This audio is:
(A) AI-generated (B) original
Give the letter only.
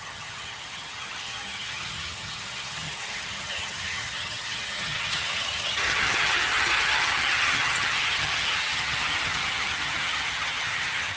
A